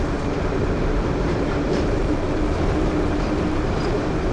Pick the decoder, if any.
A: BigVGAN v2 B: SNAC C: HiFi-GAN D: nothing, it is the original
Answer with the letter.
A